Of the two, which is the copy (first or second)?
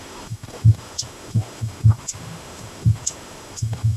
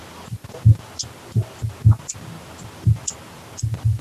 first